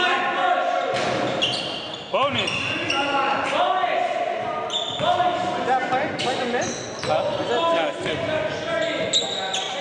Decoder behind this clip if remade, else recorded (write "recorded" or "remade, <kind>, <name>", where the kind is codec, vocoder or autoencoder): recorded